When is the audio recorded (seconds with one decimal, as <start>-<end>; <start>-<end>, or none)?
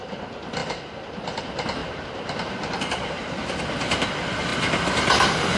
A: 0.0-1.8; 3.6-5.6